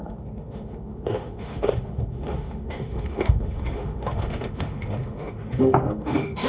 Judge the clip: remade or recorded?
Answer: remade